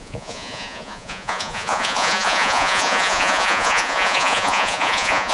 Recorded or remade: remade